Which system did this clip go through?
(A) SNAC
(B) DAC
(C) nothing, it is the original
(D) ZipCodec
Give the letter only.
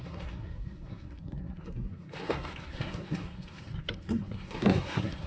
A